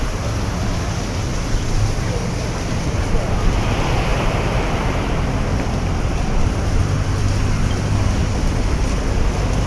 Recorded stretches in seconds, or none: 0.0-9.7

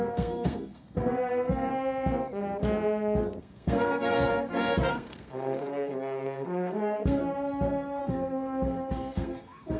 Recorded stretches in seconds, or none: 1.7-3.4; 4.3-4.9; 7.2-8.0

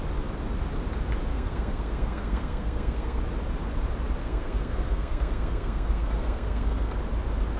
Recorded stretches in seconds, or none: 0.0-1.3; 3.2-4.2; 6.9-7.6

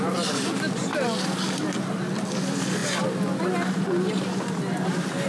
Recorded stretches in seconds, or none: 0.0-5.3

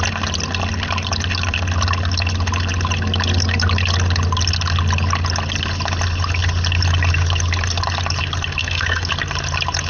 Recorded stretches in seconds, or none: 0.0-8.6; 9.1-9.9

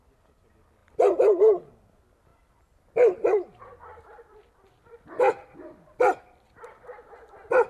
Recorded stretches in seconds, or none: 0.0-7.7

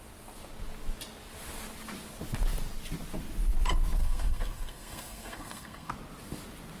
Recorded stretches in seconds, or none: 0.0-4.0; 5.9-6.8

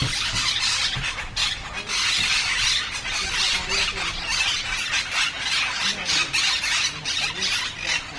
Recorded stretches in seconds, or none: 0.0-8.2